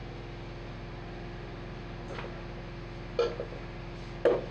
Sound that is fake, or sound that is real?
real